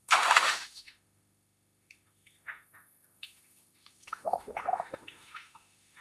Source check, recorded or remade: remade